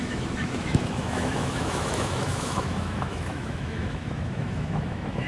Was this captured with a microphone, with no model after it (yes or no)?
no